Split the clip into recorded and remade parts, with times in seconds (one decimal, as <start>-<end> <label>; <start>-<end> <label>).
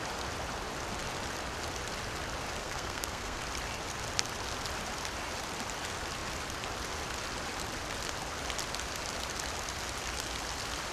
0.0-2.6 recorded; 2.6-3.4 remade; 3.4-10.9 recorded